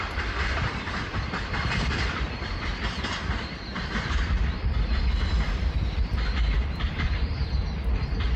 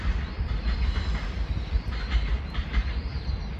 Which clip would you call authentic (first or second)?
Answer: second